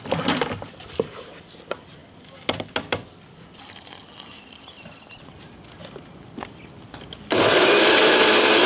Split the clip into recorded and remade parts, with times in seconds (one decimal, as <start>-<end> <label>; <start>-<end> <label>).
0.0-8.7 recorded